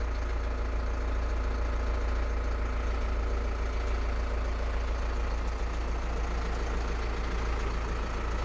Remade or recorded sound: recorded